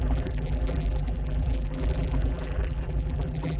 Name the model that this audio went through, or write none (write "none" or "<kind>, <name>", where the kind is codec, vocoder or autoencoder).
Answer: vocoder, BigVGAN v2